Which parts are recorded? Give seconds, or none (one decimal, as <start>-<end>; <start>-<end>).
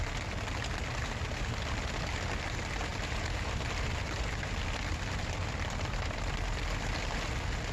0.0-2.9; 6.6-7.7